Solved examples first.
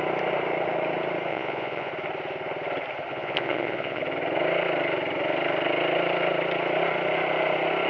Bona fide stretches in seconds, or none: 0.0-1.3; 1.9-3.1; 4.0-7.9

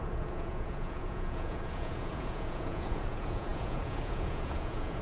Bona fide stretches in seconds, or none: none